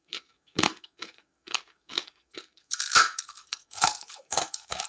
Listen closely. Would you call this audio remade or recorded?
remade